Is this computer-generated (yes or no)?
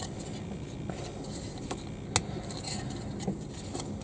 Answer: no